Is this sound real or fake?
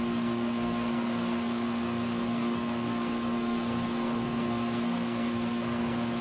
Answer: fake